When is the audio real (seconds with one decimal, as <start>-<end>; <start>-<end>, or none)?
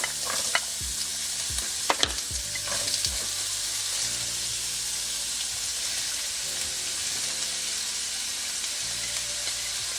0.0-10.0